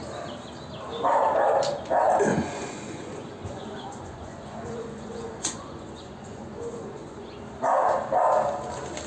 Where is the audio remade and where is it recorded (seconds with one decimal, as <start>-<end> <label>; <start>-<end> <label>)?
0.0-2.3 recorded; 2.3-7.4 remade; 7.4-9.1 recorded